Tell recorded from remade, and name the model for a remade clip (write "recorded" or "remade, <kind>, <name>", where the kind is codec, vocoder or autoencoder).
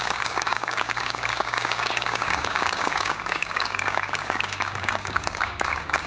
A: remade, codec, DAC